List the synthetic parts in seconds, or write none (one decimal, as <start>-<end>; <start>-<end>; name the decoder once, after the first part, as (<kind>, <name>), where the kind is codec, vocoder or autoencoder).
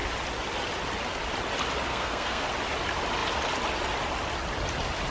1.9-2.5 (codec, SNAC)